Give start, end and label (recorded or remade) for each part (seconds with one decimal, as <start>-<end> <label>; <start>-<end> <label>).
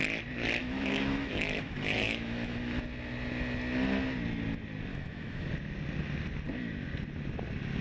0.0-0.6 recorded; 0.6-2.8 remade; 2.8-4.9 recorded; 4.9-5.5 remade; 5.5-7.8 recorded